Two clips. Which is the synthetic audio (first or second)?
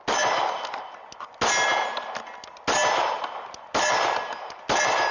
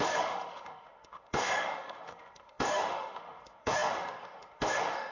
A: second